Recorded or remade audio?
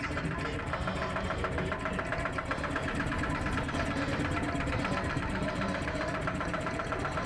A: remade